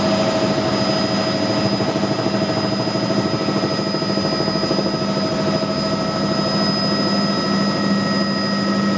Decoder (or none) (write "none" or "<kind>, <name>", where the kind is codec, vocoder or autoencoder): none